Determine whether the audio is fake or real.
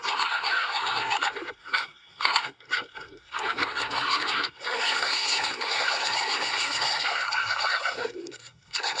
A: fake